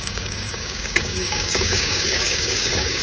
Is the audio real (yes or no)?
no